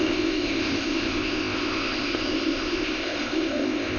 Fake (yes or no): yes